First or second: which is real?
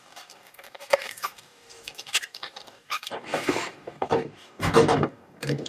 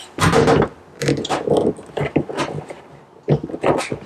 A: second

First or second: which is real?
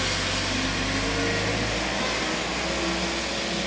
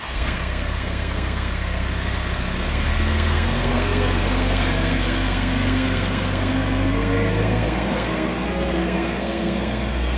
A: first